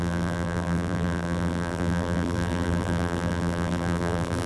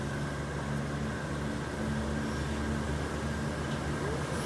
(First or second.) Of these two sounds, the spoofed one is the first